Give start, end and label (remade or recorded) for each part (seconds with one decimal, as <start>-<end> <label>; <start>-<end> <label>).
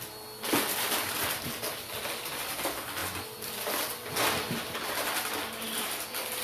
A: 0.0-6.4 recorded